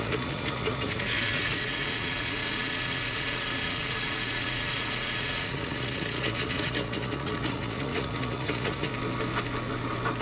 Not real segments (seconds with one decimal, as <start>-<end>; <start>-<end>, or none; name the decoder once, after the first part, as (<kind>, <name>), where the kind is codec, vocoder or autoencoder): 0.0-8.9 (vocoder, Vocos)